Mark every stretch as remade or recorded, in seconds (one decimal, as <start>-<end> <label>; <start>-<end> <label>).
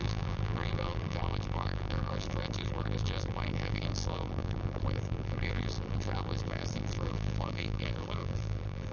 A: 0.0-8.9 remade